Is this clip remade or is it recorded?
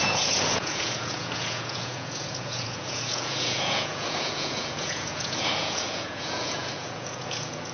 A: remade